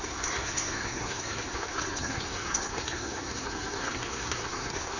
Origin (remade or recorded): remade